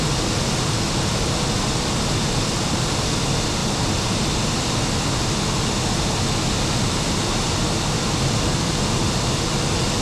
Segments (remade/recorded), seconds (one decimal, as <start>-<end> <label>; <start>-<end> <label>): 0.0-10.0 recorded

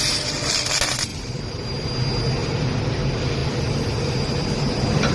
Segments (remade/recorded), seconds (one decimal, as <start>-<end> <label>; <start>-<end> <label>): 0.0-1.1 recorded; 1.1-1.9 remade; 1.9-2.4 recorded; 2.4-3.0 remade; 3.0-3.4 recorded; 3.4-4.1 remade; 4.1-5.1 recorded